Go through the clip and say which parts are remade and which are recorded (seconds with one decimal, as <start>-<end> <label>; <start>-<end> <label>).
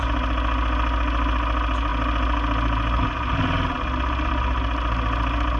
0.0-5.6 recorded